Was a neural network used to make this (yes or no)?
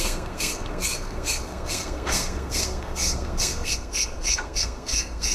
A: yes